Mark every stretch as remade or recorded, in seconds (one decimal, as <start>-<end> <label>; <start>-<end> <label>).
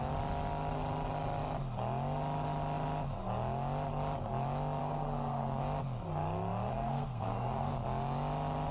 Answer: 0.0-4.8 recorded; 4.8-5.6 remade; 5.6-6.7 recorded; 6.7-7.8 remade; 7.8-8.7 recorded